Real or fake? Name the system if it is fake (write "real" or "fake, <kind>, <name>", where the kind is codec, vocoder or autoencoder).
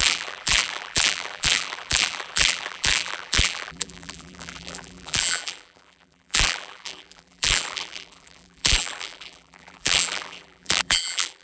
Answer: fake, vocoder, BigVGAN v2